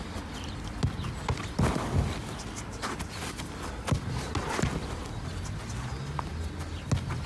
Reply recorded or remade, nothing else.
recorded